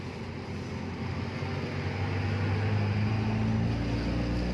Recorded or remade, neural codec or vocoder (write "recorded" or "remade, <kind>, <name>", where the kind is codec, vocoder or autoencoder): recorded